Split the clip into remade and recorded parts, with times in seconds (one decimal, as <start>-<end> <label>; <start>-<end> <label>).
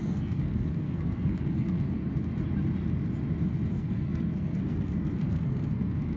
0.0-2.0 remade; 2.0-3.7 recorded; 3.7-6.2 remade